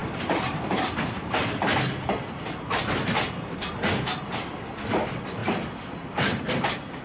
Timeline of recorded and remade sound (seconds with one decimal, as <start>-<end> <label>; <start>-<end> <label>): 0.0-0.9 remade; 0.9-5.4 recorded; 5.4-6.4 remade; 6.4-7.0 recorded